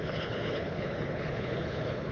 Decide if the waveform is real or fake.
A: fake